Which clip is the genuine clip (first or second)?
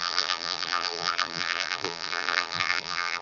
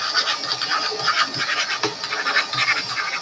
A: second